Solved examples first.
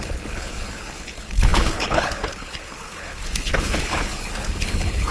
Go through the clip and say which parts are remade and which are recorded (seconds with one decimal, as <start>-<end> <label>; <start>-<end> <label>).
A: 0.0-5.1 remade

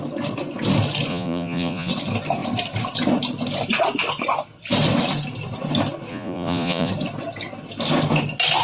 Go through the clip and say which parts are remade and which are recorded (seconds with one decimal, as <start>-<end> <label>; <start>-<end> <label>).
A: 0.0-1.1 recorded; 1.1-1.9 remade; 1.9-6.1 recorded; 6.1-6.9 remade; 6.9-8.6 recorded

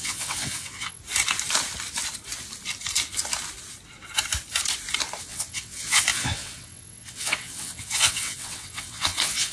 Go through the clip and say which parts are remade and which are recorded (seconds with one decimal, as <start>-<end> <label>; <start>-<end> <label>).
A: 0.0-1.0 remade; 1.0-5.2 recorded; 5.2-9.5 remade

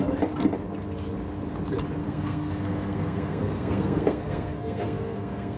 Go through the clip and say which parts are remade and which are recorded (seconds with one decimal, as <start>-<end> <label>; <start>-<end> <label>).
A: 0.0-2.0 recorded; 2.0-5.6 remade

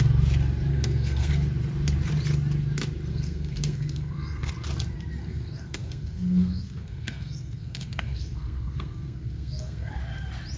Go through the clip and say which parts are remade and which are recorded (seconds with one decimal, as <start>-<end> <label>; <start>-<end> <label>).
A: 0.0-0.7 recorded; 0.7-1.3 remade; 1.3-3.1 recorded; 3.1-4.5 remade; 4.5-5.2 recorded; 5.2-10.0 remade; 10.0-10.6 recorded